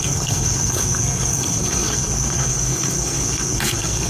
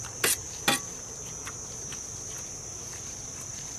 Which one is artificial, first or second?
first